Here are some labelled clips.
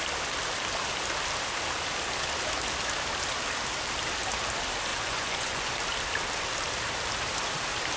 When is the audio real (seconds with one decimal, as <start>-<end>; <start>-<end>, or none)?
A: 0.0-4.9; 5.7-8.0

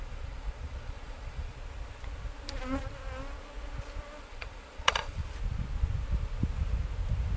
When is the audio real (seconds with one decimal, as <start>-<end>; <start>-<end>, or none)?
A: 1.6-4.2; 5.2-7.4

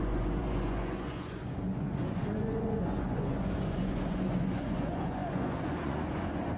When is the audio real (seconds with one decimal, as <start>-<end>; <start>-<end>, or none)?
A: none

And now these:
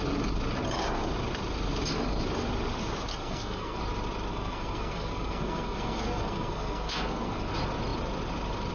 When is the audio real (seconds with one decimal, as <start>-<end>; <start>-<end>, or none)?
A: 0.0-3.1; 3.8-4.3; 7.5-8.7

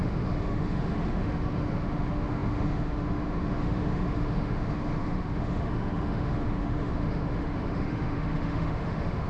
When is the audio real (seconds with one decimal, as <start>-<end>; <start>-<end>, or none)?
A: none